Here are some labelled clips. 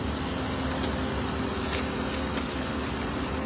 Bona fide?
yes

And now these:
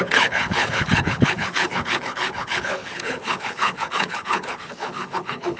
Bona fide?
no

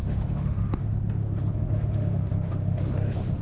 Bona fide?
no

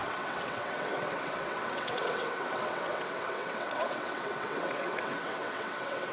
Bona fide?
no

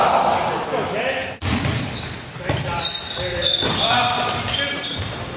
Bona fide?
yes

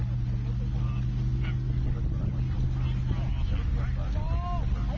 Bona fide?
yes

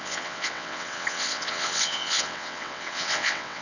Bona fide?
no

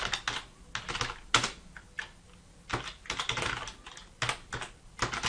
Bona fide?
yes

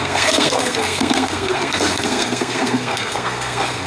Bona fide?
no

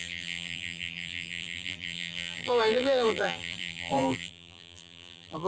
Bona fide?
no